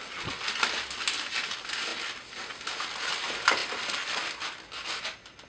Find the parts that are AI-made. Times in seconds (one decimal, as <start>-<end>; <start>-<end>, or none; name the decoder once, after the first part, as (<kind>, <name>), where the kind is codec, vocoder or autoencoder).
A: none